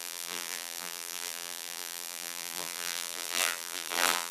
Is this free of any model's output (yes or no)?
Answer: no